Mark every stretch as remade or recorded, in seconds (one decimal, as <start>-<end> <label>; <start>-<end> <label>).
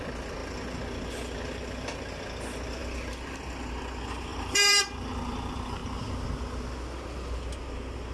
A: 0.0-4.3 recorded; 4.3-4.8 remade; 4.8-8.1 recorded